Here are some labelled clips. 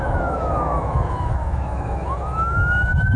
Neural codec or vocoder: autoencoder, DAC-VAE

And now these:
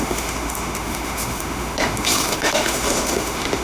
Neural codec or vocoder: autoencoder, DAC-VAE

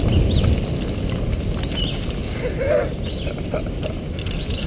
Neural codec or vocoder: none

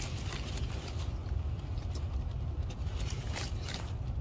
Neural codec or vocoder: none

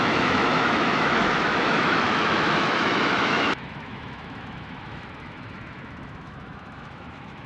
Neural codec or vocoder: autoencoder, DAC-VAE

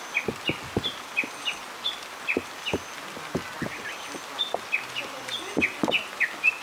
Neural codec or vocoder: none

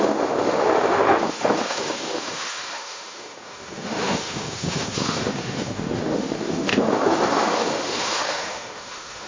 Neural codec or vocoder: autoencoder, DAC-VAE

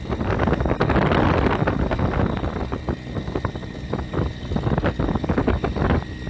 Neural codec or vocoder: none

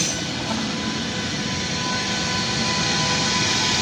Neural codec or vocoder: none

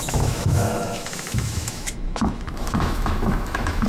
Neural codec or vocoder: autoencoder, DAC-VAE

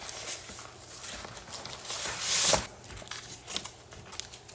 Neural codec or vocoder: none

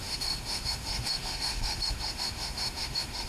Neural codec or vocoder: autoencoder, DAC-VAE